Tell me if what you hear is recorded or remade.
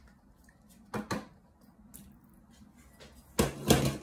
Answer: recorded